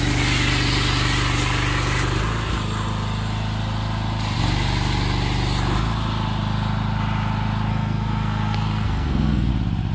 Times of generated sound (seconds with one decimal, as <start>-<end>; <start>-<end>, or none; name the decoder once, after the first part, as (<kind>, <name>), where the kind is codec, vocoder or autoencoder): 7.7-9.5 (codec, SNAC)